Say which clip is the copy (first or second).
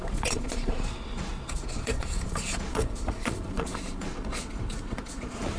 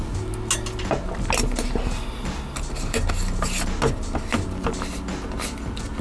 first